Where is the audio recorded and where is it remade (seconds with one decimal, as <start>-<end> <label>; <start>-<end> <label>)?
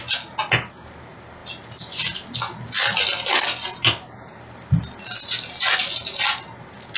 0.0-7.0 recorded